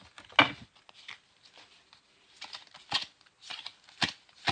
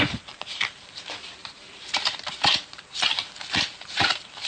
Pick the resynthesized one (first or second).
second